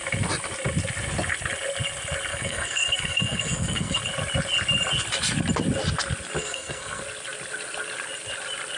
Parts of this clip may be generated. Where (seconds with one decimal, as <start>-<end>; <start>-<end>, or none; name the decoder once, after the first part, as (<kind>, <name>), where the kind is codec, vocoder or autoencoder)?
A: 2.3-4.0 (codec, SNAC); 6.4-7.0